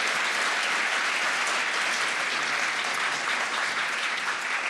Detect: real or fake real